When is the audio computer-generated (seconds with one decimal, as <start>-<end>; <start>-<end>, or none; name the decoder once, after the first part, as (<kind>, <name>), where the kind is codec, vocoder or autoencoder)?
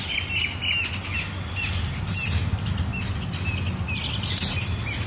none